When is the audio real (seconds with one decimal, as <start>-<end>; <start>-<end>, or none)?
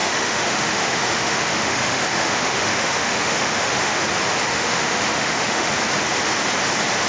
4.0-4.5; 5.7-7.1